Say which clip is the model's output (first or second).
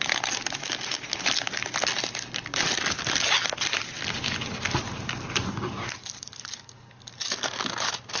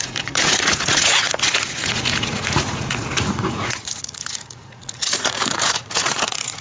second